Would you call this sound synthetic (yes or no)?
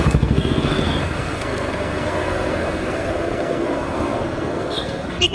yes